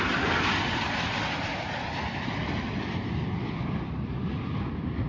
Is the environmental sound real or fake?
real